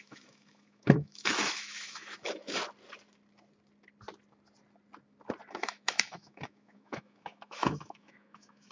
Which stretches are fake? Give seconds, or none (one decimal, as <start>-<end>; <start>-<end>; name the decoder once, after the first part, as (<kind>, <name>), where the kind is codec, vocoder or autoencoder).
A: 0.0-2.6 (autoencoder, DAC-VAE); 5.5-8.7